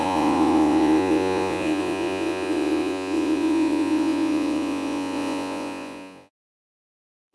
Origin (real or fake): fake